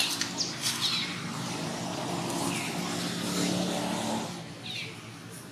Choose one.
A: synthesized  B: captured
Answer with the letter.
B